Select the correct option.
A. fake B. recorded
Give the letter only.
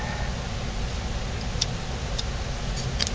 B